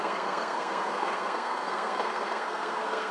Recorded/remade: remade